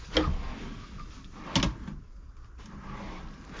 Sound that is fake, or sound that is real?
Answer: real